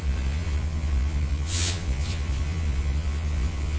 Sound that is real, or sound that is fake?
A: fake